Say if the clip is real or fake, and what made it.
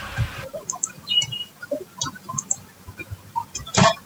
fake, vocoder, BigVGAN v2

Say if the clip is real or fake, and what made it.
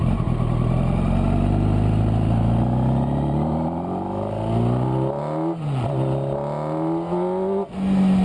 real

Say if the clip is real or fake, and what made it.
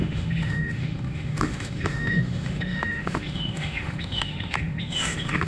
fake, autoencoder, DAC-VAE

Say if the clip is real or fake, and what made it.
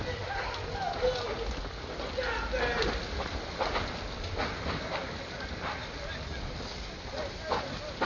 real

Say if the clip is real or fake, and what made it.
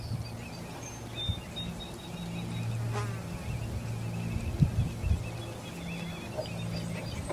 real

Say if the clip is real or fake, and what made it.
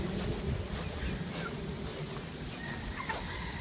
real